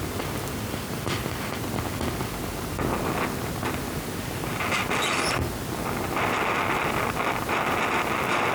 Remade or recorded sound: recorded